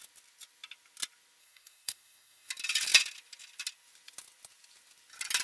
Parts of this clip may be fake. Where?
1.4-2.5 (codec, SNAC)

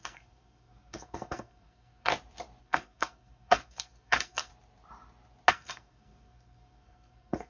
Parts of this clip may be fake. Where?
0.0-2.1 (codec, SNAC); 2.6-4.5; 5.5-7.5

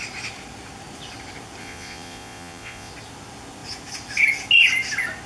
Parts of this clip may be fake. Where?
1.6-2.9 (vocoder, Vocos)

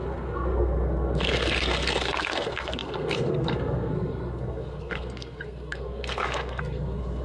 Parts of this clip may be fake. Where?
0.0-7.2 (codec, SNAC)

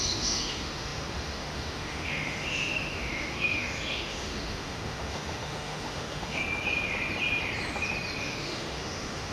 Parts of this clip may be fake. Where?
0.0-6.4 (autoencoder, DAC-VAE); 8.2-9.3

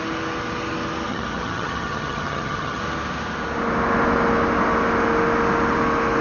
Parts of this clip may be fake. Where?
1.1-2.8 (vocoder, HiFi-GAN)